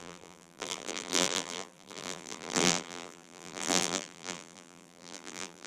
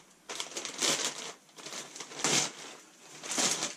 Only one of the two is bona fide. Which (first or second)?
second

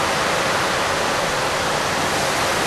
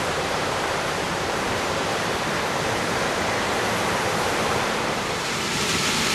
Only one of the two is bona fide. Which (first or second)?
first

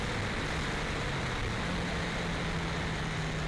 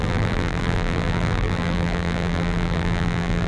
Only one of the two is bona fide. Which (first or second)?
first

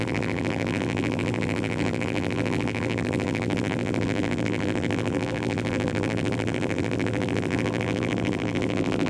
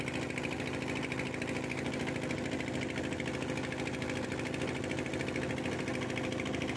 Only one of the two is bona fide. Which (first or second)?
second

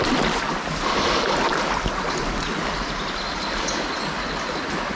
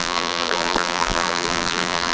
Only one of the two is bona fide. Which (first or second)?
first